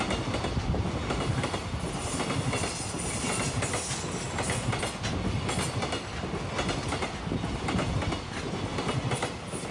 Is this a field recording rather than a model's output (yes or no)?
yes